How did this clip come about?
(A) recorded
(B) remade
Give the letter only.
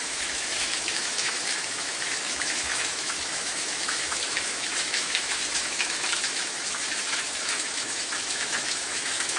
B